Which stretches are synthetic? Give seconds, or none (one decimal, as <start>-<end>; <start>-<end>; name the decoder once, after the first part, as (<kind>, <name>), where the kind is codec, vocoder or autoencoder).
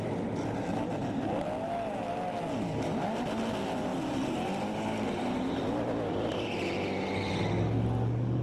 none